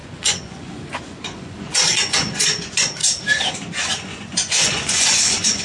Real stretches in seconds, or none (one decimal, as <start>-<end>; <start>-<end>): 3.0-3.5

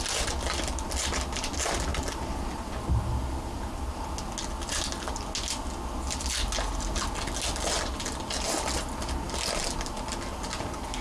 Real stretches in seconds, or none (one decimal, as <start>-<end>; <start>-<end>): 0.0-11.0

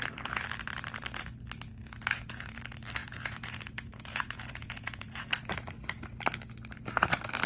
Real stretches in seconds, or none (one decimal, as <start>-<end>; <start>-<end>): 0.0-1.8; 2.6-3.0; 5.2-7.5

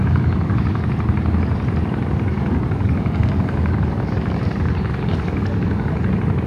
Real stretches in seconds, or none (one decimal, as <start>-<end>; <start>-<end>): 0.9-2.3; 6.0-6.5